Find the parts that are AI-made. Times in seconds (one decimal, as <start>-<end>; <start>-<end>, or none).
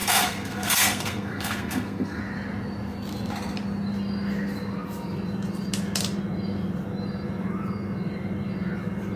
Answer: 0.0-2.2